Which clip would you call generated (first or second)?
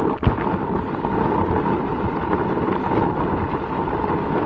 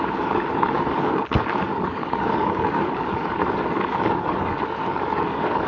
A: second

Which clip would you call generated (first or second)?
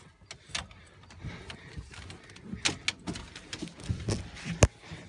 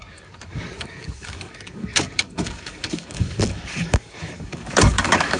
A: second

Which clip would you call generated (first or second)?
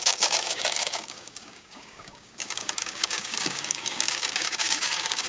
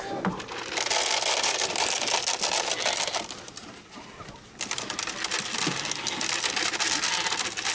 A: first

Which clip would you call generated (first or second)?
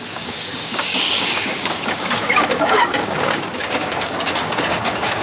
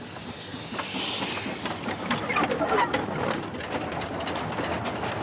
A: first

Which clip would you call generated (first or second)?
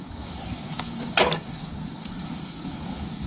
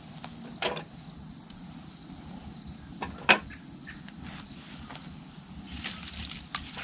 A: first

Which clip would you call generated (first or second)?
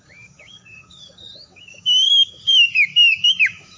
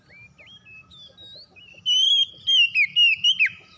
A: first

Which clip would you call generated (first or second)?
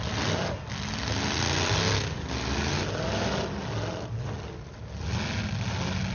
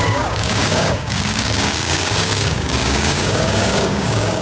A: second